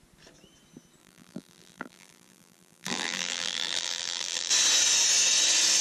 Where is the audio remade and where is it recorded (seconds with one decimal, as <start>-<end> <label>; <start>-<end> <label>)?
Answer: 0.0-1.0 recorded; 1.0-4.5 remade; 4.5-5.8 recorded